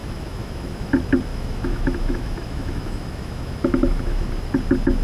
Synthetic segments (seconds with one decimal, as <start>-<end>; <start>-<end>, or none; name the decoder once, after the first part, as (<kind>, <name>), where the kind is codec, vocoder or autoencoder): 0.0-0.9 (autoencoder, DAC-VAE); 1.3-4.3